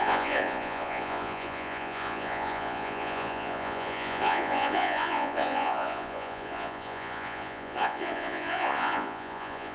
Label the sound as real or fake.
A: fake